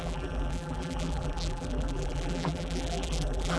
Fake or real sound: fake